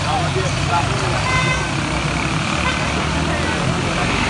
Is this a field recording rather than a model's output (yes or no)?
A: yes